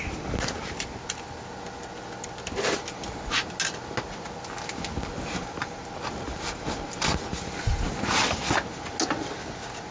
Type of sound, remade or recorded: recorded